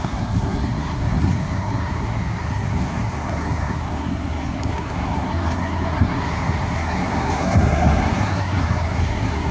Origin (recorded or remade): remade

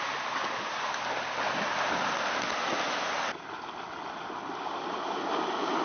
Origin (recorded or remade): recorded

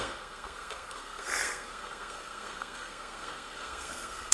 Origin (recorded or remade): remade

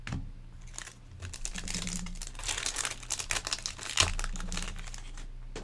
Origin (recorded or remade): recorded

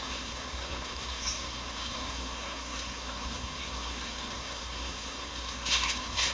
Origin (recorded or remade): remade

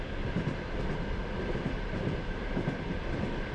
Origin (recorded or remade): recorded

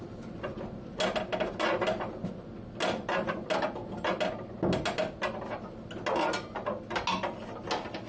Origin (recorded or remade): recorded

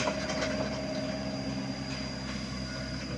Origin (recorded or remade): recorded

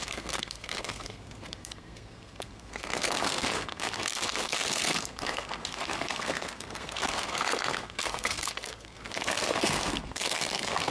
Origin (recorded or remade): remade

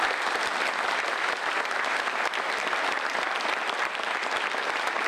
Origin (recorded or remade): recorded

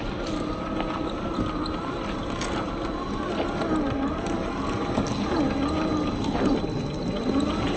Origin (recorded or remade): recorded